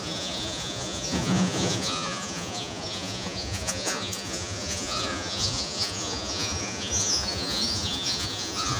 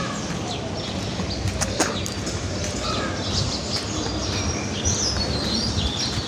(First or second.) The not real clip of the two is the first